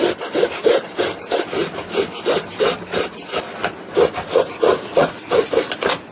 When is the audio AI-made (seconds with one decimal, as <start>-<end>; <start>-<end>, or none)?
4.3-5.5